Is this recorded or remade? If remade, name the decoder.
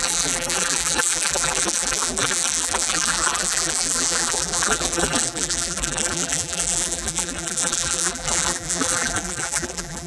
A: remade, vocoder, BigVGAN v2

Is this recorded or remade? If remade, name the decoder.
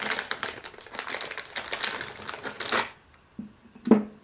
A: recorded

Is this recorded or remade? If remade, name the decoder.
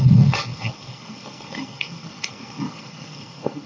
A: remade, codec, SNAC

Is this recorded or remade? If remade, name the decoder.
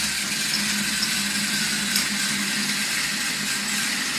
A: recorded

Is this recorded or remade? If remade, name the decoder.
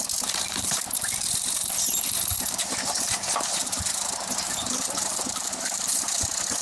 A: remade, vocoder, BigVGAN v2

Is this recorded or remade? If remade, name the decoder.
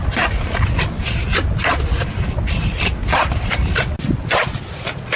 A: recorded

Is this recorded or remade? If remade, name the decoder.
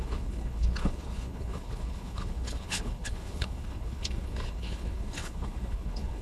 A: remade, codec, HILCodec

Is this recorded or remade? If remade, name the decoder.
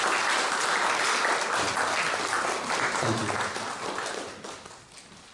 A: recorded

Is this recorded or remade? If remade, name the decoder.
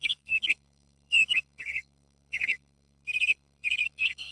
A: remade, codec, SNAC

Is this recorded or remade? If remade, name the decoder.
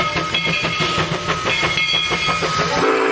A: recorded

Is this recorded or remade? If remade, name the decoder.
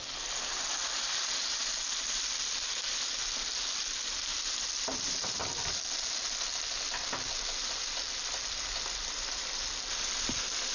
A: recorded